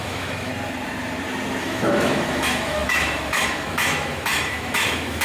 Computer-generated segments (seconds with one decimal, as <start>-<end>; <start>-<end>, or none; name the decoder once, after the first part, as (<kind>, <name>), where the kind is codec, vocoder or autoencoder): 0.0-0.5 (autoencoder, DAC-VAE); 1.6-5.2